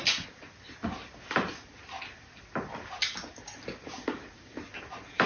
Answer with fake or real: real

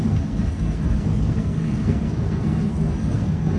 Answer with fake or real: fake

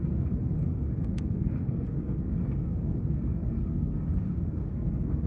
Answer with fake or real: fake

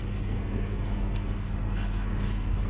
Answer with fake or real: fake